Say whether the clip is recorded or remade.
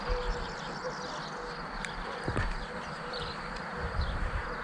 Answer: recorded